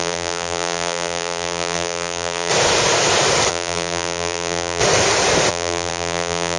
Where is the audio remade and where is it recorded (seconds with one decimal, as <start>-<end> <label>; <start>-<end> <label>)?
0.0-2.5 remade; 2.5-3.5 recorded; 3.5-4.8 remade; 4.8-5.5 recorded; 5.5-6.6 remade